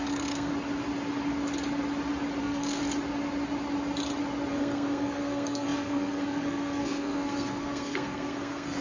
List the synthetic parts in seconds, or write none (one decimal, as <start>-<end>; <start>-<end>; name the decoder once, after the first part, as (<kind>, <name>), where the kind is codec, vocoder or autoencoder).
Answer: 0.0-0.5 (codec, SNAC); 2.4-2.8; 4.5-8.8

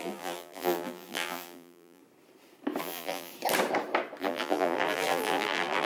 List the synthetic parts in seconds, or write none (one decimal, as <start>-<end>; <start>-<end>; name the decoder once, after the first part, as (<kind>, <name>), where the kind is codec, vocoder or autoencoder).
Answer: 0.0-2.0 (vocoder, BigVGAN v2); 2.8-3.3; 4.2-5.9

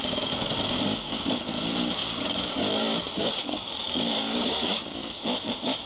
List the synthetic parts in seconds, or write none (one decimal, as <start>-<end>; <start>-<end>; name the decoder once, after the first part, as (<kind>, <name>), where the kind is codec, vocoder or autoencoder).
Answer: 0.0-5.9 (codec, DAC)